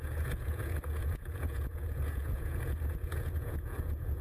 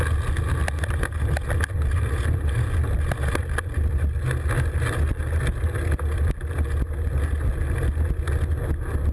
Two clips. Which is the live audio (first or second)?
second